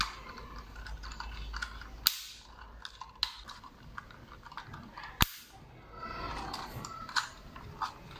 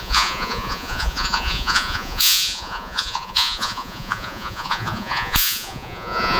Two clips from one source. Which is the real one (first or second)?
first